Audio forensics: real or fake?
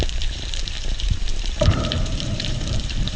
fake